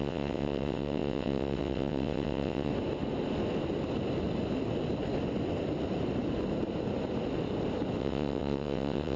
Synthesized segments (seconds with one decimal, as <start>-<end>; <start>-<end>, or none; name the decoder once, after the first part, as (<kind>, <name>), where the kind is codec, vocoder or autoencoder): 0.0-2.7 (vocoder, WaveNeXt); 8.0-9.2